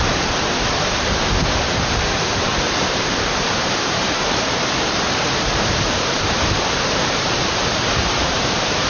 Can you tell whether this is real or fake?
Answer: fake